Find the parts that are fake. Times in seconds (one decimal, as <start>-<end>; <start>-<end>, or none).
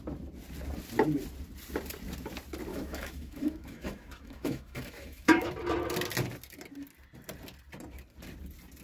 2.7-5.5